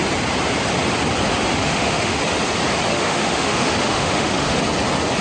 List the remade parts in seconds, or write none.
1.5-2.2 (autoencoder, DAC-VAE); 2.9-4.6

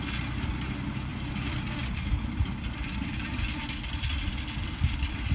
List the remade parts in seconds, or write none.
none

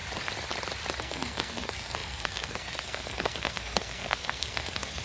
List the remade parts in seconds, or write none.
1.0-5.0 (codec, SNAC)

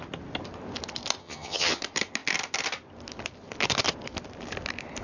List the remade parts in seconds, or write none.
1.2-1.8 (vocoder, HiFi-GAN)

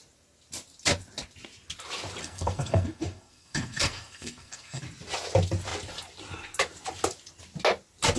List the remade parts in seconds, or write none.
2.2-4.8 (codec, SNAC)

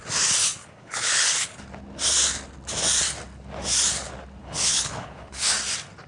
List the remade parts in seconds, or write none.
0.6-1.6 (codec, HILCodec); 4.4-5.5

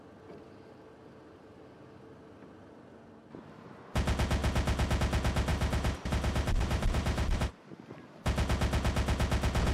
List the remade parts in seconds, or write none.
5.5-8.0 (vocoder, BigVGAN v2)

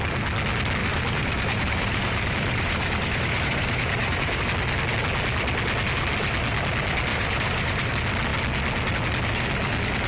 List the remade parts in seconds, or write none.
0.8-4.4 (vocoder, BigVGAN v2); 7.1-7.9